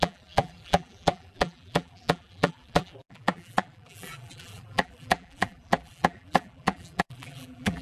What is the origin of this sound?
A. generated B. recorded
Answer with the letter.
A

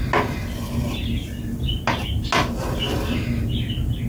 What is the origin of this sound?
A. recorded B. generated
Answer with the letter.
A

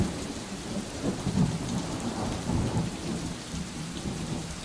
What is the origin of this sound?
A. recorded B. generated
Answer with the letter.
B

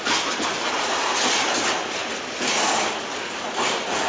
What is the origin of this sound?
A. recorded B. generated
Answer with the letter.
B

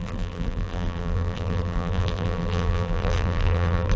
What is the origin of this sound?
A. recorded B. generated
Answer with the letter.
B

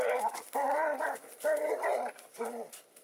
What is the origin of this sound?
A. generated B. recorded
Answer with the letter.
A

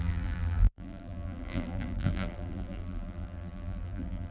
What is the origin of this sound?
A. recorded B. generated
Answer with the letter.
B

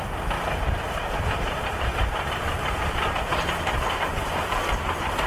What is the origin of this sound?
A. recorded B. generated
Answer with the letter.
B